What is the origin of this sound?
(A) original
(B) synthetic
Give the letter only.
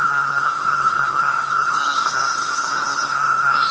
B